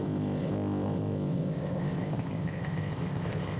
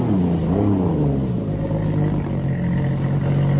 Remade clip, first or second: first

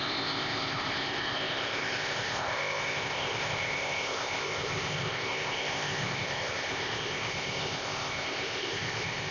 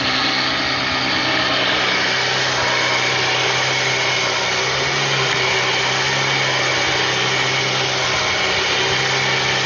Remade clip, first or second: first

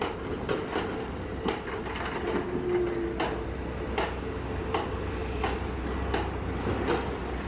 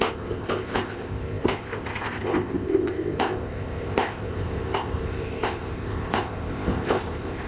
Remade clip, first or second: second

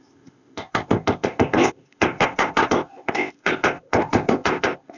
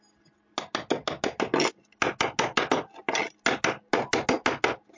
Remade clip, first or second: first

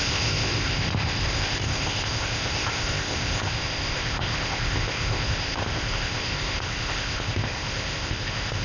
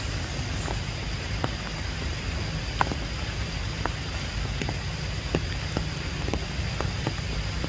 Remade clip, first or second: first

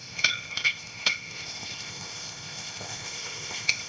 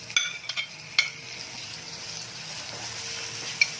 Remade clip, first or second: first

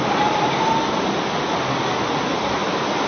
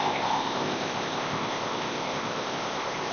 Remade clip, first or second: second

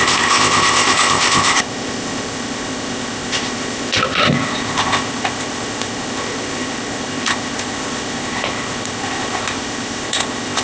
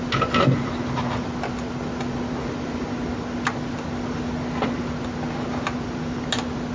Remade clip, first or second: first